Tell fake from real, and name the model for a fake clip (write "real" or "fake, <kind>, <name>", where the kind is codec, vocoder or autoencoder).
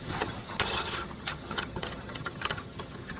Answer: fake, vocoder, HiFi-GAN